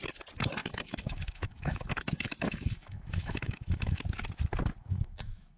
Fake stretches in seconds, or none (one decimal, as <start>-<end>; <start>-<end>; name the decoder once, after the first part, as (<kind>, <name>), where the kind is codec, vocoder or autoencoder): 0.6-4.0 (autoencoder, DAC-VAE); 4.8-5.6